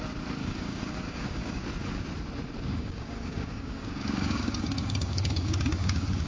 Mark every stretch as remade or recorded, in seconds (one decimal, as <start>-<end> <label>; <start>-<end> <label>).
0.0-0.4 recorded; 0.4-1.6 remade; 1.6-2.7 recorded; 2.7-6.3 remade